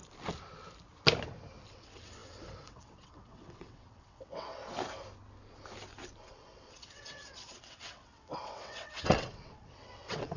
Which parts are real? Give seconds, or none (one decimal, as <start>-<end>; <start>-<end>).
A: 0.0-1.7; 4.6-6.3